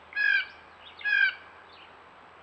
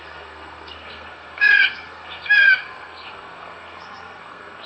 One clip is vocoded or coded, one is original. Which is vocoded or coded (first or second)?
second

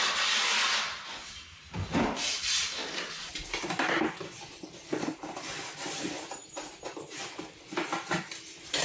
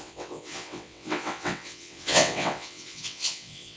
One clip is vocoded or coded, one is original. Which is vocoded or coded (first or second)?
second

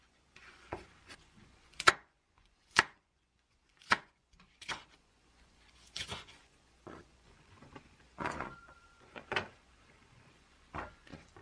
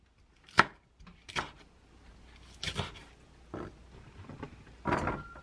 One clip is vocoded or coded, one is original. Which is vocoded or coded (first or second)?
first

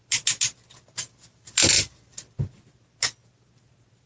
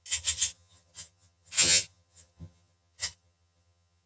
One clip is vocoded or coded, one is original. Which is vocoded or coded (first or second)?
second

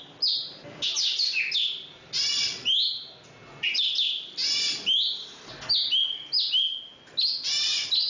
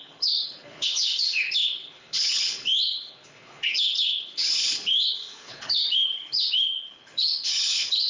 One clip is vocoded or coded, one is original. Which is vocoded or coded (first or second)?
second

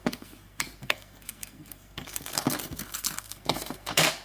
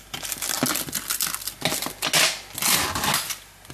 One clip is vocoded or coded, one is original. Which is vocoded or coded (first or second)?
first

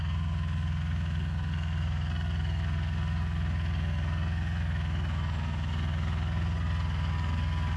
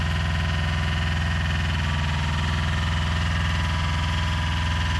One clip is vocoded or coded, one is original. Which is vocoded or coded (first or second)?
first